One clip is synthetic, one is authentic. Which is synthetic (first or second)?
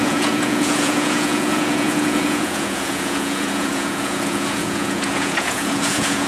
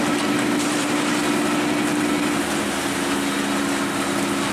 first